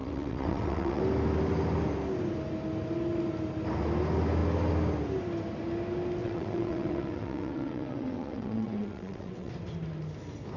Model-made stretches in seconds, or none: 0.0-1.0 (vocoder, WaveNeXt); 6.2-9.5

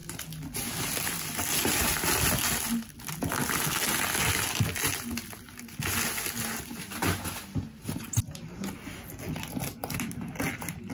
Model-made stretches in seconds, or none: none

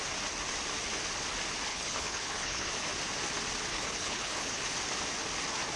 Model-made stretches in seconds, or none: 1.7-2.7 (codec, HILCodec); 3.7-4.6

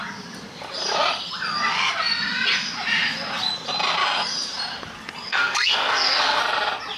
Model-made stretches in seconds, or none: 5.3-6.4 (codec, SNAC)

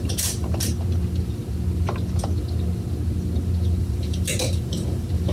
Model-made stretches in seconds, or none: 0.0-0.7 (vocoder, BigVGAN v2); 3.8-5.3